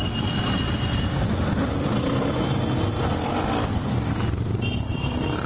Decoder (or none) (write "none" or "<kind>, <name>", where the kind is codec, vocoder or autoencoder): none